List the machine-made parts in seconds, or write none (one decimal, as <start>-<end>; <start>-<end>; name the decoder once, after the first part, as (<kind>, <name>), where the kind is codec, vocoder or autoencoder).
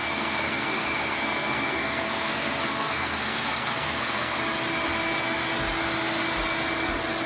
0.0-4.4 (codec, SNAC)